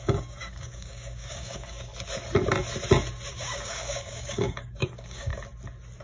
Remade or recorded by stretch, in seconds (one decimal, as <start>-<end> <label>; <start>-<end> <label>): 0.0-1.9 remade; 1.9-3.3 recorded; 3.3-5.3 remade; 5.3-6.0 recorded